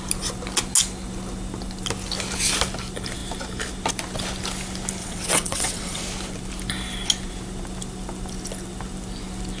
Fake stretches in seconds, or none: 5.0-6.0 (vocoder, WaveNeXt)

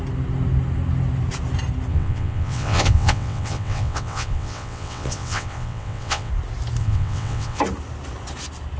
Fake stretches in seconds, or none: 1.9-6.3 (vocoder, WaveNeXt); 6.8-7.6

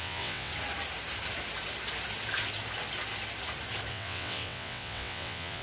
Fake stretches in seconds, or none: 0.0-0.5 (vocoder, WaveNeXt); 3.9-5.6

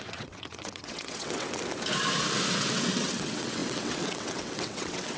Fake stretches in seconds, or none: 0.0-1.6 (vocoder, WaveNeXt); 2.5-5.2

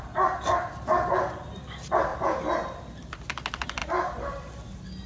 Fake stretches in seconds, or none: none

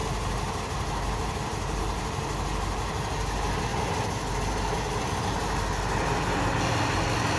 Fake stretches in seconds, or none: none